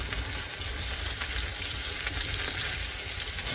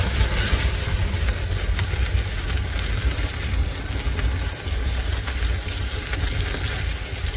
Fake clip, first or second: first